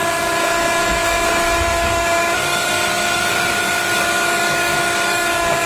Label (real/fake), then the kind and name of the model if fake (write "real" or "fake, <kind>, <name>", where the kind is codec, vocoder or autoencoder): fake, codec, DAC